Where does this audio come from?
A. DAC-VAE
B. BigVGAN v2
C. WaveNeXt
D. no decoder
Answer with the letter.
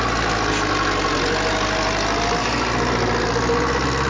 D